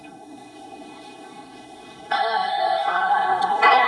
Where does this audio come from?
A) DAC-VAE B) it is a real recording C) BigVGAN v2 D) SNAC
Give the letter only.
D